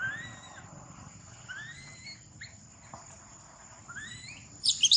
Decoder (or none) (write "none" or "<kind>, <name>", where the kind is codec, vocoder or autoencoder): vocoder, BigVGAN v2